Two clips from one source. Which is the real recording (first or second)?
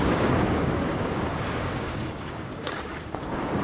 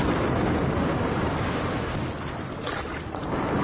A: second